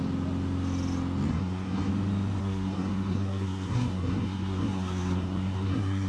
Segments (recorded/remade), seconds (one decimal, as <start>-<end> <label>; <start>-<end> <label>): 0.0-1.3 recorded; 1.3-1.9 remade; 1.9-2.4 recorded; 2.4-6.1 remade